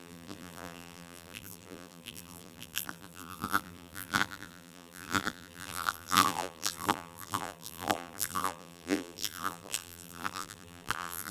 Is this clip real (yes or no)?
no